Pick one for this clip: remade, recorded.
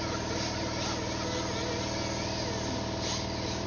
recorded